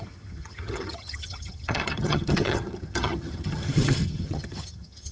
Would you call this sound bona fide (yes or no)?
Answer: no